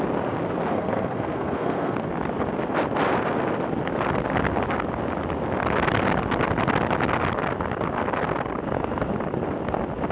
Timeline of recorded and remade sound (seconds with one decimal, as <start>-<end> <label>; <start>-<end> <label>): 0.0-0.7 recorded; 0.7-2.1 remade; 2.1-10.1 recorded